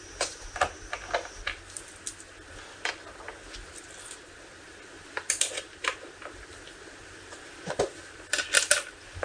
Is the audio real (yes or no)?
yes